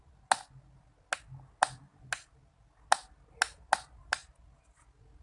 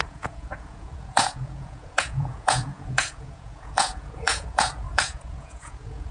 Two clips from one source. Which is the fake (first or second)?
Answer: second